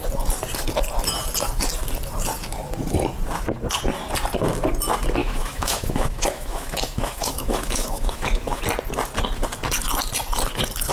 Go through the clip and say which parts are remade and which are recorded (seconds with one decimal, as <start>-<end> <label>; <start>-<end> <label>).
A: 0.0-5.2 recorded; 5.2-8.6 remade; 8.6-10.9 recorded